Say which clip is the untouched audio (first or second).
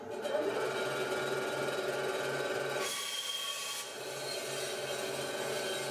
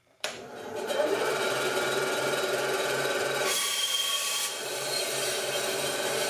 first